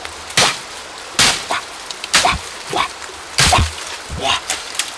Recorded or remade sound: recorded